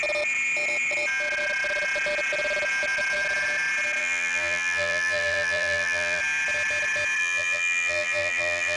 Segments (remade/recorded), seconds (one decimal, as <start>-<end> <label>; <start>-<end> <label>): 0.0-4.0 recorded; 4.0-6.2 remade; 6.2-7.2 recorded; 7.2-8.8 remade